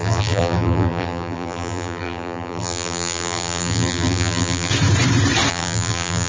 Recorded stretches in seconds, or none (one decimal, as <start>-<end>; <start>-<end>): 4.7-5.5